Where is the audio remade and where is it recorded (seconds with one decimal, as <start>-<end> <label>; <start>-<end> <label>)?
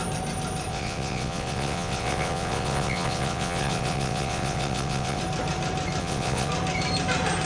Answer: 0.0-0.7 recorded; 0.7-5.2 remade; 5.2-6.0 recorded; 6.0-6.5 remade; 6.5-7.5 recorded